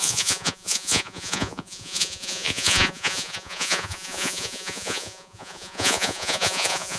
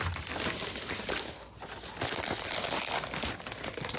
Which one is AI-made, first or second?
first